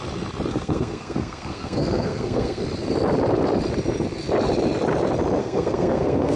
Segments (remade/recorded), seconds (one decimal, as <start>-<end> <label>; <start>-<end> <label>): 0.0-0.5 recorded; 0.5-2.6 remade; 2.6-5.4 recorded; 5.4-6.4 remade